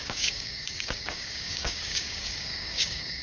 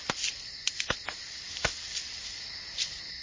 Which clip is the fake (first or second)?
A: first